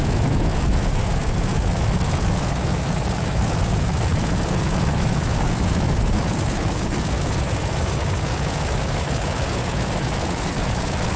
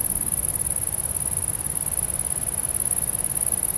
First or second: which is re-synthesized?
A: first